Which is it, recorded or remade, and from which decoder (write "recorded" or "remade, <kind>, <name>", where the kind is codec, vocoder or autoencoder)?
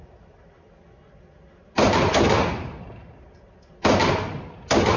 recorded